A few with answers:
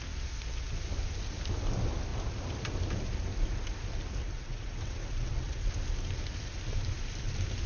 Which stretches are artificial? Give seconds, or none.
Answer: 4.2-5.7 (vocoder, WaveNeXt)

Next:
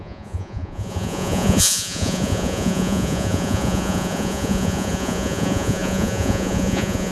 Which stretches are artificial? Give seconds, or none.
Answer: 0.0-7.1 (vocoder, Vocos)

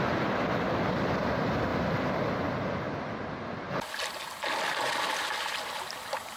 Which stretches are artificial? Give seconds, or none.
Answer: none

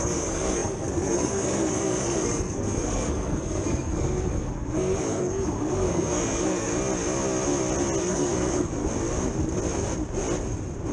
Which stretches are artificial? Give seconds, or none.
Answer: 0.0-6.7 (codec, SNAC); 8.0-8.8